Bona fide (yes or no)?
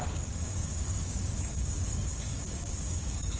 no